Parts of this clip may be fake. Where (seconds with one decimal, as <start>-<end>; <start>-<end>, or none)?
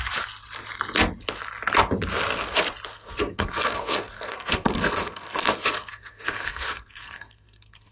2.9-7.9